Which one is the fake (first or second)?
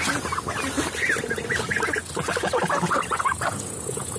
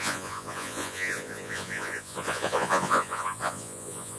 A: second